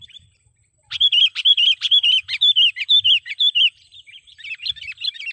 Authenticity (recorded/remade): remade